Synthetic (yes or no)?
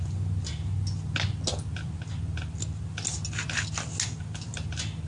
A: no